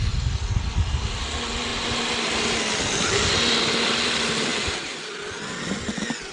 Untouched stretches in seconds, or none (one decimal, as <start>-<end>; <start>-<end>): 0.0-6.3